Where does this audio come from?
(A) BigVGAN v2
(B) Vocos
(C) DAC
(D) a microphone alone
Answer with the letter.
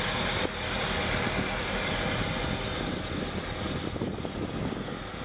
D